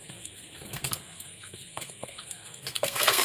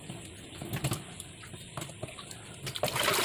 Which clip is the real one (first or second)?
second